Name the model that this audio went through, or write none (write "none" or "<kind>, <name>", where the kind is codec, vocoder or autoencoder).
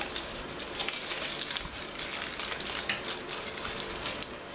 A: none